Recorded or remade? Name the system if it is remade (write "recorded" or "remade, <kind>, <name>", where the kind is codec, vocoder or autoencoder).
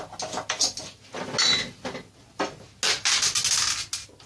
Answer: recorded